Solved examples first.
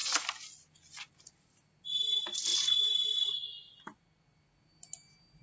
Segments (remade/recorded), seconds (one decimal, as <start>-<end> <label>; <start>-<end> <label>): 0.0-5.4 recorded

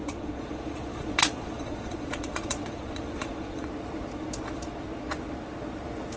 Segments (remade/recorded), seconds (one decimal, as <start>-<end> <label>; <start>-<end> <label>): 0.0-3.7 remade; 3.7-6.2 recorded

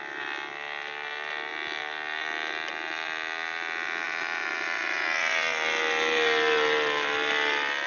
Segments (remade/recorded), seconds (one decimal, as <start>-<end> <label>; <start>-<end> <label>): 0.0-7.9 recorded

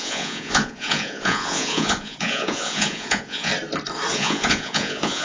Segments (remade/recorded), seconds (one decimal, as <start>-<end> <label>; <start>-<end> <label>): 0.0-3.5 remade; 3.5-4.1 recorded; 4.1-5.2 remade

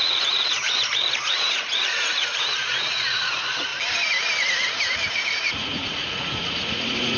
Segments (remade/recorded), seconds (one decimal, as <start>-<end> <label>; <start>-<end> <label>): 0.0-3.7 remade; 3.7-5.1 recorded; 5.1-7.2 remade